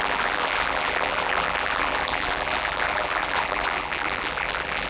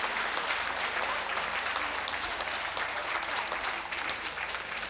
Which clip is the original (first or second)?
second